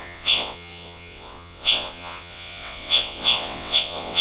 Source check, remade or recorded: remade